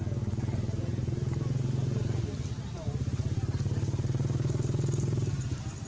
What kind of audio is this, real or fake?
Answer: real